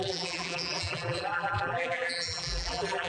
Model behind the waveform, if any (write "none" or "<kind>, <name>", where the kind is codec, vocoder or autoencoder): vocoder, BigVGAN v2